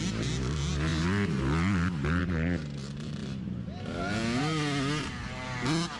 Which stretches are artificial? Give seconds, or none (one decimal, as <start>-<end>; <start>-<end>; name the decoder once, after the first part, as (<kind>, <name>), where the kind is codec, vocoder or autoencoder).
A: none